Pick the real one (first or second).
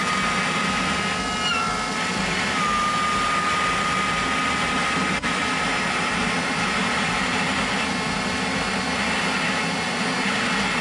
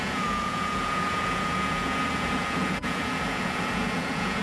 first